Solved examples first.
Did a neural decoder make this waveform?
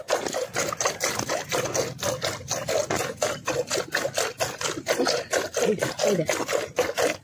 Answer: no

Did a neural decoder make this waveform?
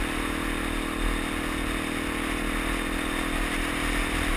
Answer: no